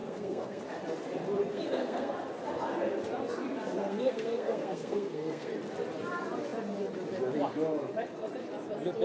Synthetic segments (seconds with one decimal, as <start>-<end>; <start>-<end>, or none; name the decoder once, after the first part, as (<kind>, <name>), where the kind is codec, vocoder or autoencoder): 0.0-0.6 (codec, SNAC); 1.5-2.1; 3.8-5.5